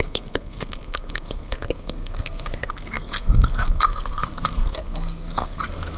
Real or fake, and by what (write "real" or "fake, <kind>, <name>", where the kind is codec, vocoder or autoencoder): fake, codec, SNAC